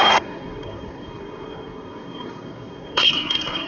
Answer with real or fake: fake